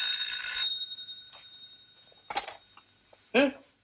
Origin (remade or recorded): recorded